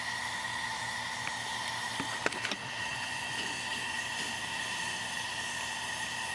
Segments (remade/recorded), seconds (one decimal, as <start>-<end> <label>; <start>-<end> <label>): 0.0-2.9 recorded; 2.9-3.6 remade; 3.6-6.3 recorded